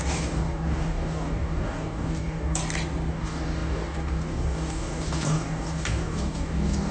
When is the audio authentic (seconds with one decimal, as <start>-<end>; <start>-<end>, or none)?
2.6-3.1